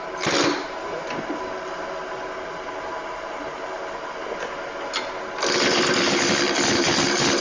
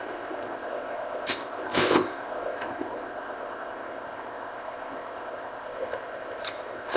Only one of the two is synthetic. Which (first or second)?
second